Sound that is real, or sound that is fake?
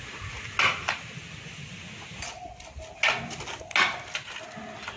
real